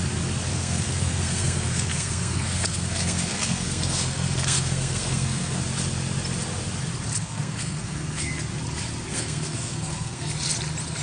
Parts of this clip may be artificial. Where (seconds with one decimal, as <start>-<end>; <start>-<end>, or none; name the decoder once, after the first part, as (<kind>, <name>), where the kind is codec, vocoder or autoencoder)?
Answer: 0.5-5.6 (codec, SNAC); 7.2-8.3; 9.1-10.3